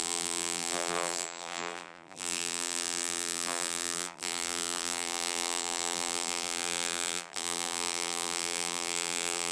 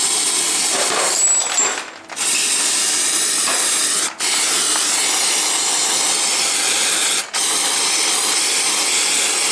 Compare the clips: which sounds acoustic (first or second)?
second